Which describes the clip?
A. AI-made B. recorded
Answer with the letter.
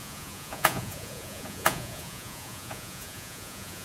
A